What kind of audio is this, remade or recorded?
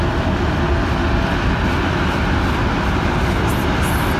recorded